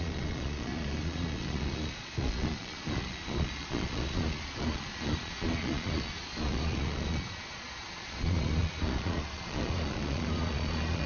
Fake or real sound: fake